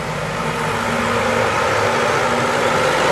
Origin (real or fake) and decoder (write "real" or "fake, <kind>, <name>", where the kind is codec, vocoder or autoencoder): real